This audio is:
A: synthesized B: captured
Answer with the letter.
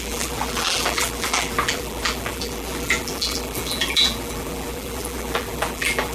A